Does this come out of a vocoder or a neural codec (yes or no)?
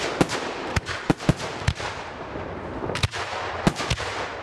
no